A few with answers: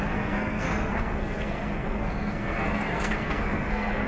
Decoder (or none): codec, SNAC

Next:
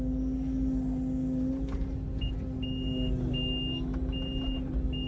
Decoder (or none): none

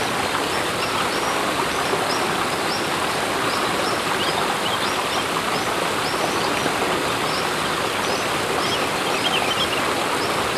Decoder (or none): none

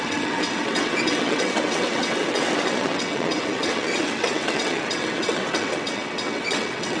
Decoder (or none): vocoder, WaveNeXt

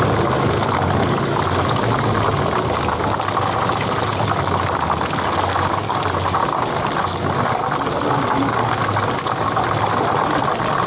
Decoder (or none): none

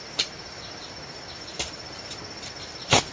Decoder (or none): none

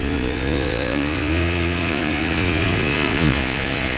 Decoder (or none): vocoder, Vocos